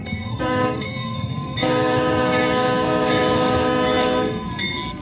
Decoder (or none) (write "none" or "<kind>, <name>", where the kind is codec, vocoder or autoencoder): codec, SNAC